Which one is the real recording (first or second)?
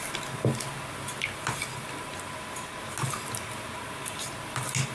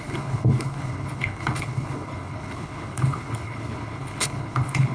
first